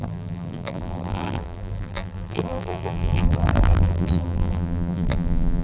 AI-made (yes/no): yes